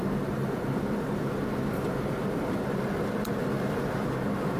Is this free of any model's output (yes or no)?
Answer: yes